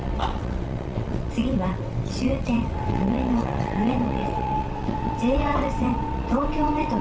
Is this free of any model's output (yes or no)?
no